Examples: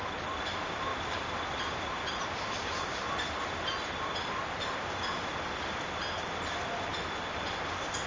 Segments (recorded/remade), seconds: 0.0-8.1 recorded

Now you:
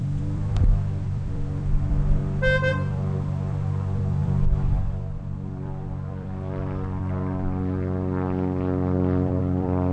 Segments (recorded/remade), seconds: 0.0-2.2 remade; 2.2-2.7 recorded; 2.7-9.9 remade

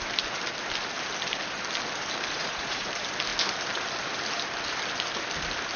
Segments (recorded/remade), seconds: 0.0-2.4 recorded; 2.4-2.9 remade; 2.9-5.8 recorded

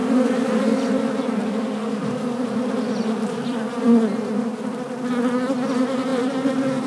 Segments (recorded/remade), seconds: 0.0-1.5 remade; 1.5-2.0 recorded; 2.0-3.6 remade; 3.6-6.1 recorded; 6.1-6.9 remade

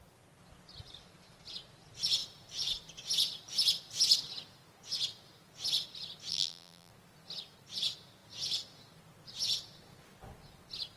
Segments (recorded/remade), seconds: 0.0-6.3 recorded; 6.3-6.9 remade; 6.9-11.0 recorded

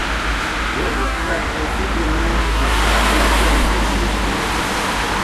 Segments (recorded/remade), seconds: 0.0-0.8 recorded; 0.8-1.4 remade; 1.4-2.4 recorded; 2.4-2.8 remade; 2.8-5.2 recorded